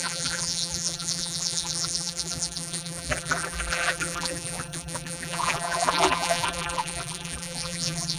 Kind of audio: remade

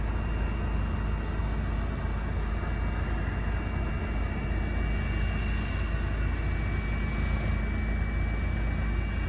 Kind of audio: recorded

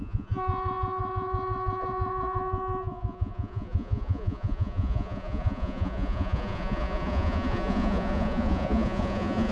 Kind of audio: remade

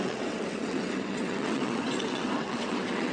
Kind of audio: remade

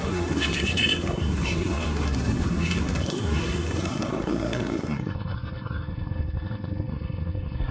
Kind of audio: remade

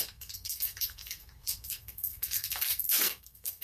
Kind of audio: remade